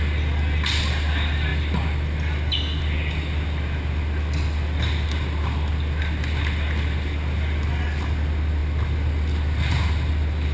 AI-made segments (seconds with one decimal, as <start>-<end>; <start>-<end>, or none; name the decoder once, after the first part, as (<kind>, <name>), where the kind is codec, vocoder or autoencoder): none